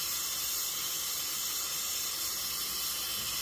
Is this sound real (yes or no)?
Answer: yes